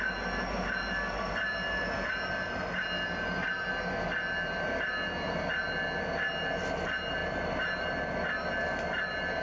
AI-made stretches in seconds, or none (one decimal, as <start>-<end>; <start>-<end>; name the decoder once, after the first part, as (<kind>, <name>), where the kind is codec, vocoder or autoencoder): none